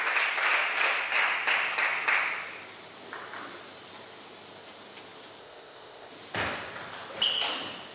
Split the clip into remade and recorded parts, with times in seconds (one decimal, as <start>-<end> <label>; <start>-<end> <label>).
0.0-5.4 recorded; 5.4-6.1 remade; 6.1-7.9 recorded